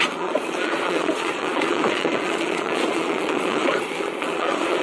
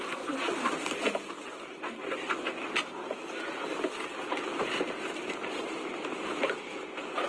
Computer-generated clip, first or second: first